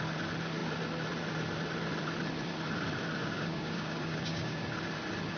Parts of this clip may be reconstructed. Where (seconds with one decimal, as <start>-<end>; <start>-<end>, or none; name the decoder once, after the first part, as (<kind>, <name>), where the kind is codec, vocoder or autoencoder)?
3.2-4.6 (codec, DAC)